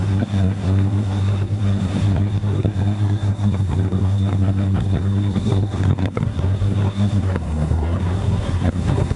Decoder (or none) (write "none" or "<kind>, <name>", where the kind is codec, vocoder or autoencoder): codec, SNAC